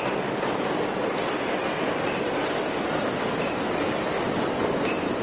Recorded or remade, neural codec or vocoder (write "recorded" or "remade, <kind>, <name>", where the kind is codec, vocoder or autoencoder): recorded